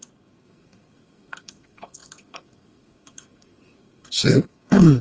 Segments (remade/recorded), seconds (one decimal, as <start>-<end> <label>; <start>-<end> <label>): 0.0-5.0 remade